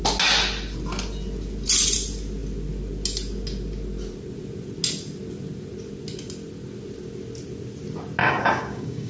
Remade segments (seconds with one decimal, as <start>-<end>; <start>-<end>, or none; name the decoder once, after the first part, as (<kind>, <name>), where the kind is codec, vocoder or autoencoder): 8.2-9.1 (codec, DAC)